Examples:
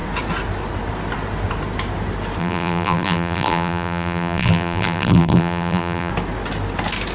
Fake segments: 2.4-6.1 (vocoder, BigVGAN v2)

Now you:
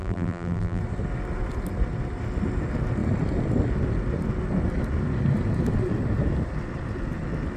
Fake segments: 0.0-0.8 (vocoder, BigVGAN v2)

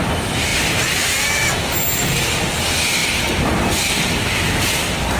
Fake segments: none

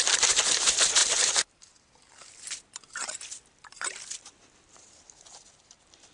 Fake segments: 0.0-6.1 (vocoder, BigVGAN v2)

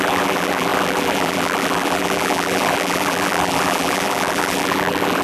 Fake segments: 0.0-5.2 (vocoder, BigVGAN v2)

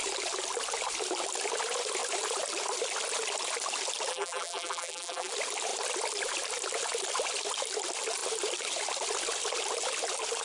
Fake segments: 4.1-5.3 (vocoder, BigVGAN v2)